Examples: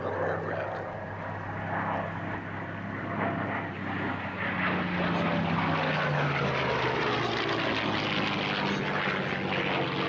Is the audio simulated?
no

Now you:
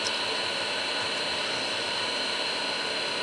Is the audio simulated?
no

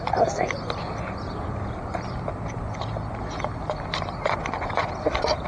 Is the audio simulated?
no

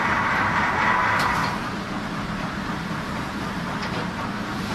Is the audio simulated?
yes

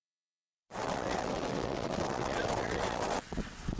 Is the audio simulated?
yes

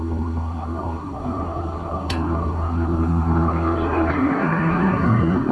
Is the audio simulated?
yes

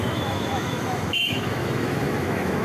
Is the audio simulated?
yes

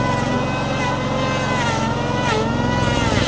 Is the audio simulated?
no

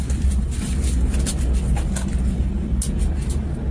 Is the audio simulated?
no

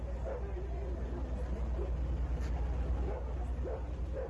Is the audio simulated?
no